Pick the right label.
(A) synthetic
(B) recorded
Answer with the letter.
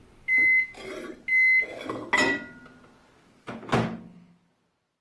B